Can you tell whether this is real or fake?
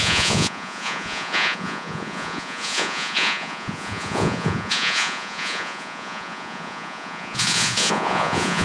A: fake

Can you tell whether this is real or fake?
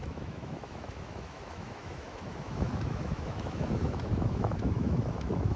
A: fake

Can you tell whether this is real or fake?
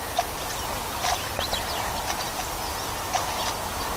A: real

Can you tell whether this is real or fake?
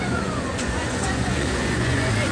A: fake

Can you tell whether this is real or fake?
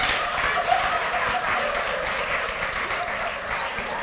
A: real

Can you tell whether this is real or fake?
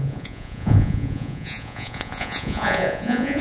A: fake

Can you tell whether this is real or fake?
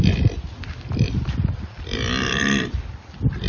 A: real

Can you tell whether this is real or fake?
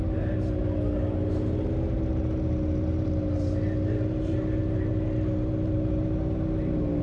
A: real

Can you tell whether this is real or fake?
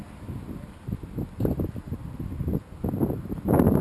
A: real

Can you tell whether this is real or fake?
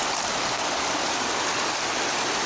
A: real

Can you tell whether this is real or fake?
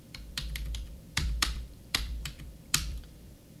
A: fake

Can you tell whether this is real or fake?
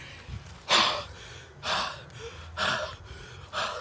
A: real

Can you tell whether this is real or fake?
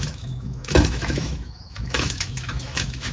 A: fake